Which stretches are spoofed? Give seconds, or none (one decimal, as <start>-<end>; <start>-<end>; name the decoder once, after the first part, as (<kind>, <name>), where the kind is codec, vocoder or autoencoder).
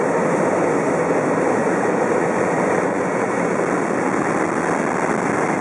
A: 1.6-3.5 (vocoder, Vocos)